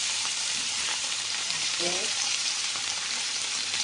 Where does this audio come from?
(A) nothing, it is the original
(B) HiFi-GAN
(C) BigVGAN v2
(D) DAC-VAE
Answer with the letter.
C